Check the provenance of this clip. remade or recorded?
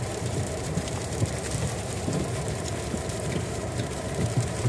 remade